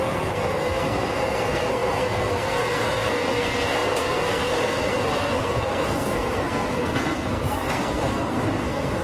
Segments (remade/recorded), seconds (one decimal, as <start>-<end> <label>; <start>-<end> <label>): 0.0-9.0 remade